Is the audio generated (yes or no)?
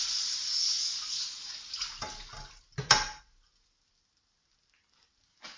no